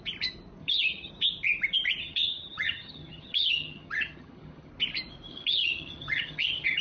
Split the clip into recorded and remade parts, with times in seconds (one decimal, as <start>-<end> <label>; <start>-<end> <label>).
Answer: 0.0-0.6 recorded; 0.6-1.1 remade; 1.1-2.0 recorded; 2.0-4.7 remade; 4.7-5.3 recorded; 5.3-6.8 remade